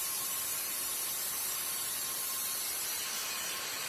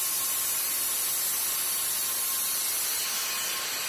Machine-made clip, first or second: first